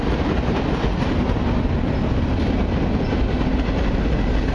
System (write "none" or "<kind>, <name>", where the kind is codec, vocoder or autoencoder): none